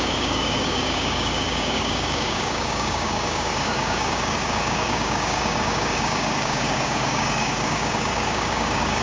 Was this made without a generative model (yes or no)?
no